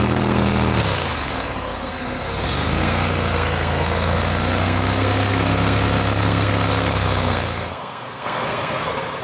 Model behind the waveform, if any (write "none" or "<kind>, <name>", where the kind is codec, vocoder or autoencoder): codec, SNAC